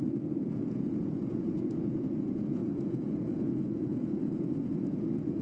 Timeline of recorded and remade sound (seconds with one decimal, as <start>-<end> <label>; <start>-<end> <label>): 0.0-5.4 remade